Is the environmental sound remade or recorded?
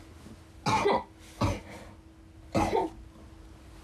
recorded